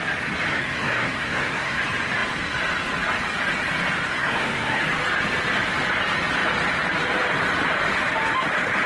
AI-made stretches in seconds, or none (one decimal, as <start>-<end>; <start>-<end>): 0.5-1.8; 4.1-4.8